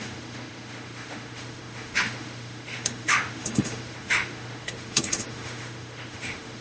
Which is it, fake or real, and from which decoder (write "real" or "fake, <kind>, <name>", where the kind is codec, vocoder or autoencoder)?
fake, autoencoder, DAC-VAE